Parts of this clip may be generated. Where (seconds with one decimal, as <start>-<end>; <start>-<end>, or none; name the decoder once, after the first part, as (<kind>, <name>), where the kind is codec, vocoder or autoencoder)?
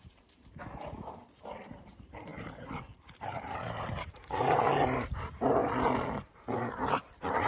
0.0-0.6 (vocoder, BigVGAN v2); 1.4-5.6; 6.3-7.5